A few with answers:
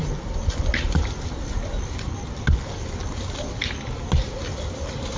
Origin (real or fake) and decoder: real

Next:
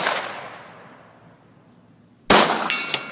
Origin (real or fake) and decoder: real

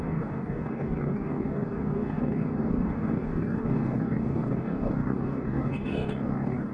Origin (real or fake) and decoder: fake, codec, DAC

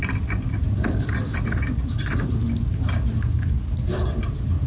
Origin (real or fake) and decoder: real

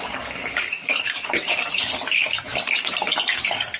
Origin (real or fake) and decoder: fake, codec, DAC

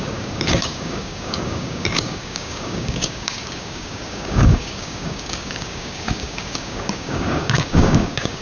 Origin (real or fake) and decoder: fake, codec, DAC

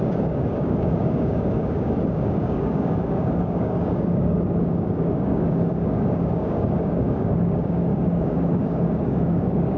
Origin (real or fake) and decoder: fake, codec, DAC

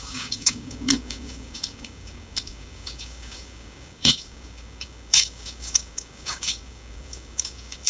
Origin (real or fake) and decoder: fake, codec, DAC